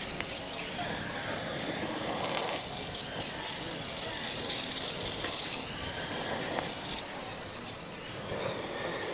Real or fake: real